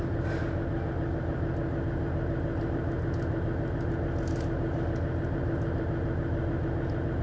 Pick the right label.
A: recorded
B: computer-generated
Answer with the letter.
A